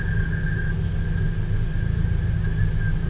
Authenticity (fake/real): real